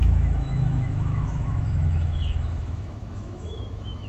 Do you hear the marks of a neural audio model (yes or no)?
yes